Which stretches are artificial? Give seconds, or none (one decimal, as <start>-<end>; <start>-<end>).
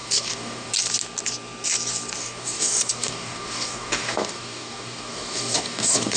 0.0-0.7; 2.2-6.2